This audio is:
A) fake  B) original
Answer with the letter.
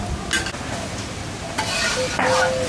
B